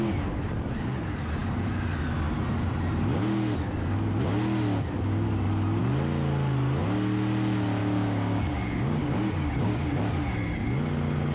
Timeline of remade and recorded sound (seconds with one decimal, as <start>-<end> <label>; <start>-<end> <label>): 0.0-7.8 recorded; 7.8-9.9 remade; 9.9-11.3 recorded